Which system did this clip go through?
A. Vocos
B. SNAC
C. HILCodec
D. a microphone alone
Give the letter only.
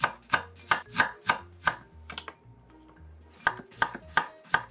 D